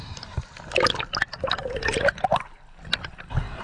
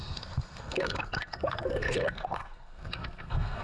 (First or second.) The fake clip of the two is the second